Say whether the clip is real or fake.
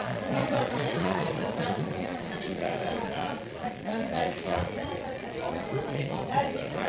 fake